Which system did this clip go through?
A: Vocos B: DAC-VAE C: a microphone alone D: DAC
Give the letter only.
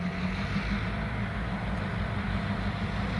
C